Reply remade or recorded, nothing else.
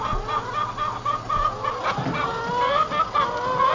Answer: recorded